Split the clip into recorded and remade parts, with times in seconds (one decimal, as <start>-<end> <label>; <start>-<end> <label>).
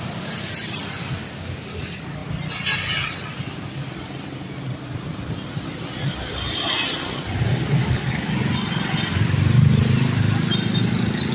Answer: 0.0-7.8 recorded; 7.8-8.3 remade; 8.3-11.3 recorded